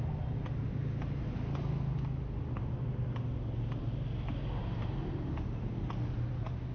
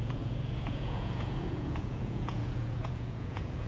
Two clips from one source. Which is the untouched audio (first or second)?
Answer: first